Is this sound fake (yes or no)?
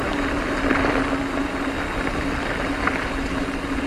no